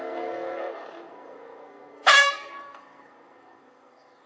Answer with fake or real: fake